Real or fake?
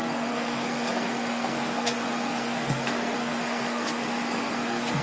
fake